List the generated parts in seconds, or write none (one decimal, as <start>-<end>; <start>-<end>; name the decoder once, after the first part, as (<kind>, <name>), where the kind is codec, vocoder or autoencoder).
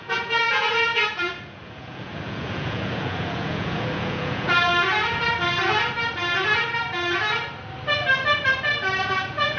0.0-4.7 (vocoder, Vocos); 9.0-9.6